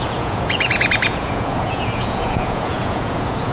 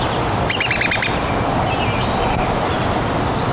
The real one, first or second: second